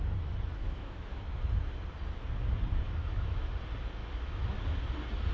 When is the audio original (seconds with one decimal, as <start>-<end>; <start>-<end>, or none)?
0.0-0.6; 1.2-3.0; 3.5-4.0; 4.6-5.3

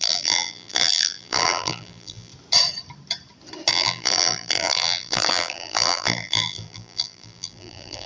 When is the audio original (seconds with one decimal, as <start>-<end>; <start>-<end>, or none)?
2.3-3.7

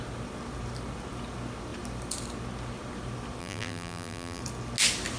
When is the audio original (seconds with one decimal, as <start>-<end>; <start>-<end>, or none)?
0.0-3.4; 4.4-5.2

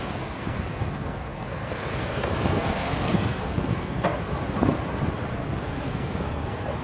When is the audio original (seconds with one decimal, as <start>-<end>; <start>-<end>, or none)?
4.3-5.3

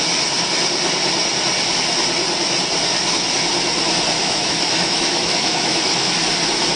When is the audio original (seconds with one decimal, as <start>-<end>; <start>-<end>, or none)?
0.0-4.2; 6.1-6.8

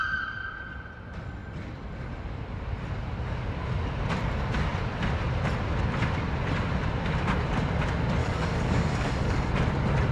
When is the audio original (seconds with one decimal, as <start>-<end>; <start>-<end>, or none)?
0.0-8.2; 9.5-10.1

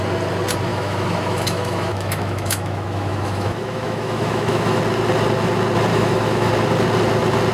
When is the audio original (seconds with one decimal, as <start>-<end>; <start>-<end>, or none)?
0.0-0.7; 4.8-5.9; 6.5-7.5

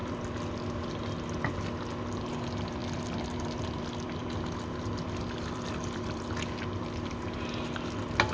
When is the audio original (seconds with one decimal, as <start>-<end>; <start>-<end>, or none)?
0.0-2.8; 6.2-8.3